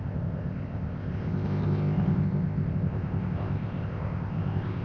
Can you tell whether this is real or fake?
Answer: fake